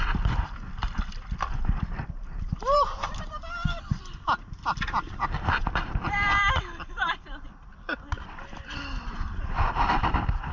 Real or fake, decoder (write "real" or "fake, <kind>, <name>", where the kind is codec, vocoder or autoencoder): fake, vocoder, BigVGAN v2